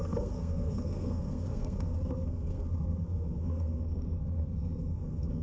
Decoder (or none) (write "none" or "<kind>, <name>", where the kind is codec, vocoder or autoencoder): codec, SNAC